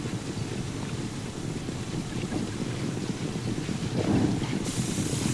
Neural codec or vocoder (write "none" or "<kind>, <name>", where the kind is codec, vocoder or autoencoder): vocoder, BigVGAN v2